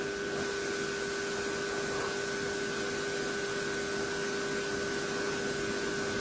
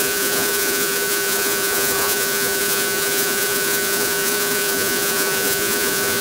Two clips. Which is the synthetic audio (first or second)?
second